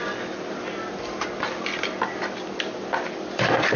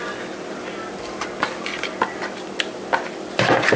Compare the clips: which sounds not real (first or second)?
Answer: second